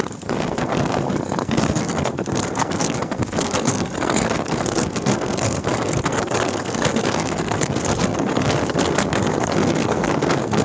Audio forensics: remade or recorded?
remade